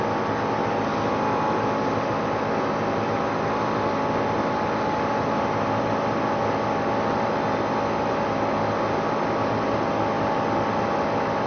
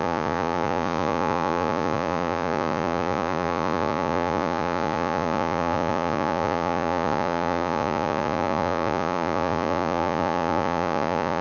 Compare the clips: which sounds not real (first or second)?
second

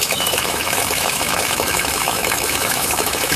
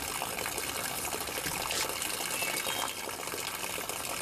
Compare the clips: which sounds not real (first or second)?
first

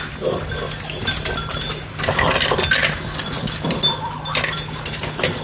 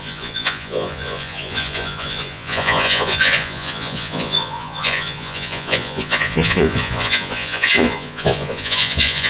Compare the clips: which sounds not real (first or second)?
second